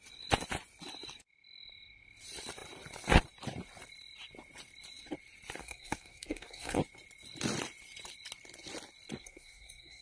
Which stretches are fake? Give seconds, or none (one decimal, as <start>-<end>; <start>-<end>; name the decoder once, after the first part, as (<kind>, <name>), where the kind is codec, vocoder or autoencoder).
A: 5.6-6.8 (codec, SNAC); 9.2-10.0